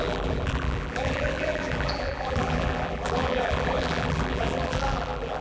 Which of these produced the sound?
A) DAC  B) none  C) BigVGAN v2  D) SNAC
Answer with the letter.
C